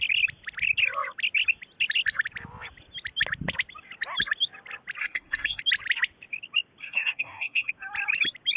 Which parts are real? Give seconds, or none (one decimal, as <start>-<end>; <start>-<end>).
0.0-5.0; 5.6-6.8; 7.7-8.6